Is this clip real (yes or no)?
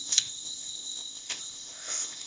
no